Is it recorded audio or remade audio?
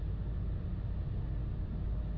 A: recorded